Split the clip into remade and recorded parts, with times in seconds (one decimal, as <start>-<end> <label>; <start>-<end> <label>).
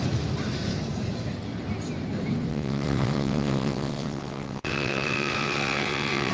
0.0-2.5 recorded; 2.5-6.3 remade